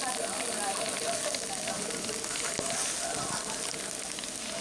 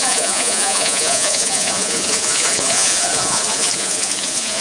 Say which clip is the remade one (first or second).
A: second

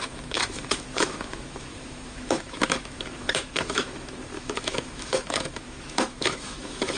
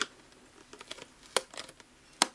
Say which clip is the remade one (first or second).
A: first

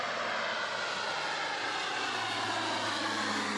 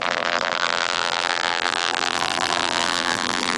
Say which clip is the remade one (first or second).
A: second